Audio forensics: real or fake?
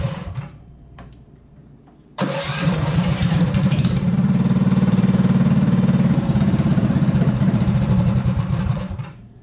fake